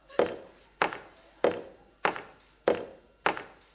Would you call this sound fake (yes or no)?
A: no